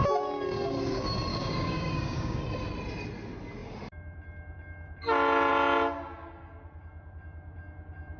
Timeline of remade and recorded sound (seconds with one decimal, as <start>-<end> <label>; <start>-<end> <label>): 0.0-1.3 recorded; 1.3-2.4 remade; 2.4-8.2 recorded